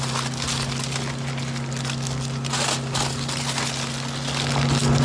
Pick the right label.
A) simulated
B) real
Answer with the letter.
B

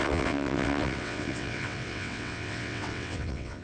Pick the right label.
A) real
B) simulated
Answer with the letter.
B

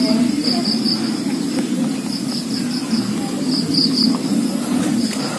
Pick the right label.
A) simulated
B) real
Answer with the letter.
B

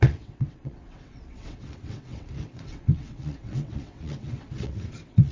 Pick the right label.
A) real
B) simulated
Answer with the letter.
B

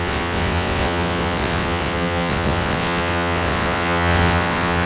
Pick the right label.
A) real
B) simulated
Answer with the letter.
B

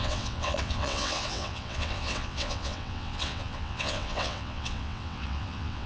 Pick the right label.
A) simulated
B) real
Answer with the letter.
A